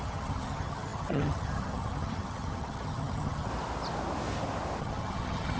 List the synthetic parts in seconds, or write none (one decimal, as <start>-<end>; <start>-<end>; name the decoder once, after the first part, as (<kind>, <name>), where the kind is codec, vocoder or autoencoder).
0.0-3.5 (vocoder, HiFi-GAN); 4.8-5.6